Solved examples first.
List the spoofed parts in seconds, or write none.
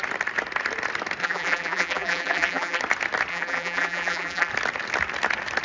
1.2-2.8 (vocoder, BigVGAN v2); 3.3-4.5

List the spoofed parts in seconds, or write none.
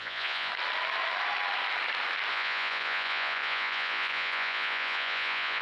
0.0-0.5 (vocoder, Vocos); 2.3-5.6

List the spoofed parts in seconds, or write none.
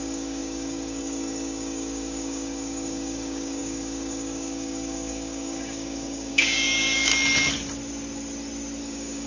0.0-7.1 (codec, DAC); 8.8-9.3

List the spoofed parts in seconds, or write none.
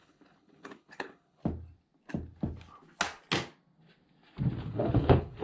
0.0-1.4 (codec, HILCodec); 4.6-5.4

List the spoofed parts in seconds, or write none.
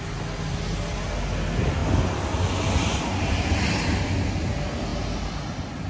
none